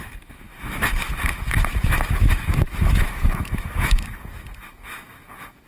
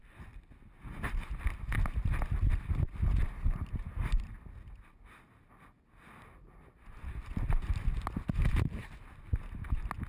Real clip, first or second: second